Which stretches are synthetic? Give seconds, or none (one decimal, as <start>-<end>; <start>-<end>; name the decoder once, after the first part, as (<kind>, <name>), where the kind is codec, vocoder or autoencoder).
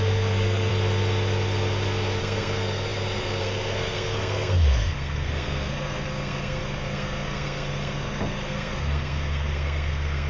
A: 0.0-0.7 (codec, SNAC); 2.2-10.3